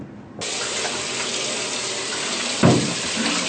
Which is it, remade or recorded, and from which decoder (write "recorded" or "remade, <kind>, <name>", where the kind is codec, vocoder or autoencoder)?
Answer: recorded